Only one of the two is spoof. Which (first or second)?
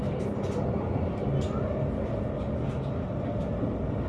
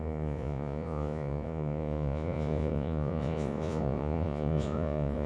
second